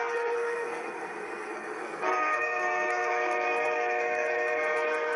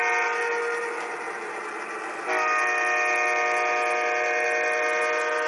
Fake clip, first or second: first